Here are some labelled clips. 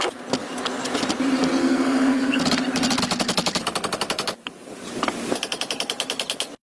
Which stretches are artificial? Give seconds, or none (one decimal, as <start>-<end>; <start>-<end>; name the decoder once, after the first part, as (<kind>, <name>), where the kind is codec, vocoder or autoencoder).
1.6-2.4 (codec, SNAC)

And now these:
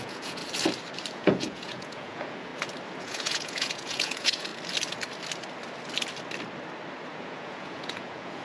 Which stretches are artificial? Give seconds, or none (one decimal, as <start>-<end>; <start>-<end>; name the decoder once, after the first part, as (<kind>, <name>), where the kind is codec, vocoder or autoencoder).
0.0-0.4 (vocoder, Vocos); 1.1-2.5; 3.0-4.5; 7.1-8.4

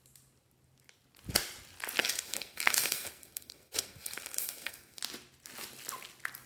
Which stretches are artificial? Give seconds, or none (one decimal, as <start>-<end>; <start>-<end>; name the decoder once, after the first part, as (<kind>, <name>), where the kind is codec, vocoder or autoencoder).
2.0-5.0 (codec, SNAC)